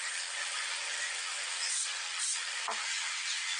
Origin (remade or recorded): recorded